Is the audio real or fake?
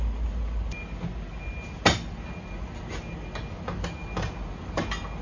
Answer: real